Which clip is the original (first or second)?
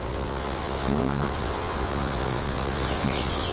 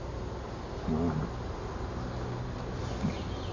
second